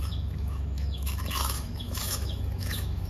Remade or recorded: remade